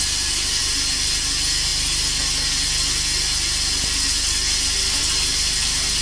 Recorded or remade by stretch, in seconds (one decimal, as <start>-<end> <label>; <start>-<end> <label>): 0.0-6.0 recorded